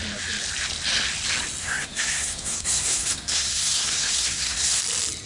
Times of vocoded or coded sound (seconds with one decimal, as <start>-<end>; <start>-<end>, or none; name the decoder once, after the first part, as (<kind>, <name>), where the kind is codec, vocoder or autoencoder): 1.6-4.8 (codec, SNAC)